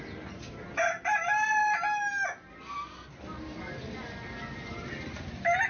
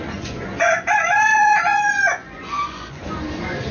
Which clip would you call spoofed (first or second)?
second